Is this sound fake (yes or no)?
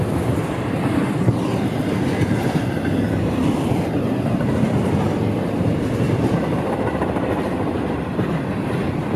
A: yes